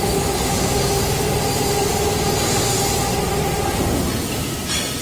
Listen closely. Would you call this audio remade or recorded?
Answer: recorded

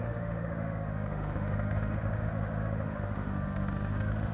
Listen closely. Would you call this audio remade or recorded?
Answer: remade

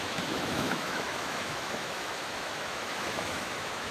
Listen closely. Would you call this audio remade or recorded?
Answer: remade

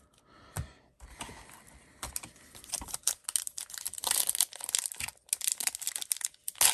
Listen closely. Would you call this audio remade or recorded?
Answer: recorded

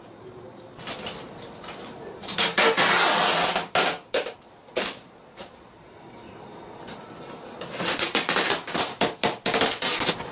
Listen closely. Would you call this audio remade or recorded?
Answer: recorded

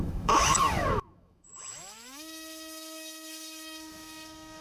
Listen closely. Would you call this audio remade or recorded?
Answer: remade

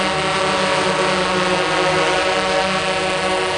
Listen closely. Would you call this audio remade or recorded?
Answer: recorded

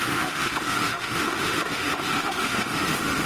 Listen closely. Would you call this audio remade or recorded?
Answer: remade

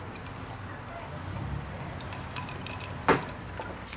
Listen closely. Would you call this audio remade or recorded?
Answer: recorded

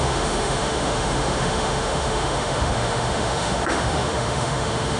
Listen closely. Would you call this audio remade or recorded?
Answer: remade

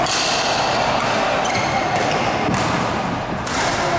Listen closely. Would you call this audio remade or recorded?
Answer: recorded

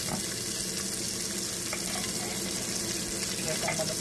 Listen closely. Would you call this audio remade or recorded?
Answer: recorded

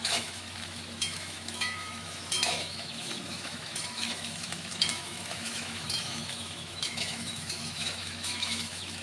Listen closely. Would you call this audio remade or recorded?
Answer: remade